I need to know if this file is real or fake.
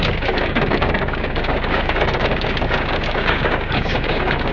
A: fake